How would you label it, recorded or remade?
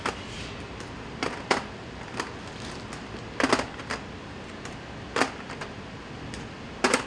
recorded